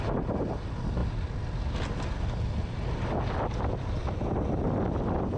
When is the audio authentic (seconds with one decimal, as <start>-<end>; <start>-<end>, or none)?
0.0-5.4